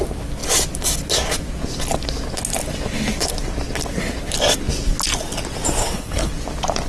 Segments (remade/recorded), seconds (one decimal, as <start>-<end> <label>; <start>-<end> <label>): 0.0-5.8 recorded; 5.8-6.3 remade; 6.3-6.9 recorded